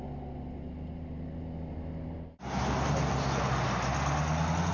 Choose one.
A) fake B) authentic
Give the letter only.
B